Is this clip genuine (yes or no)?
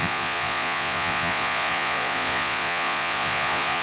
no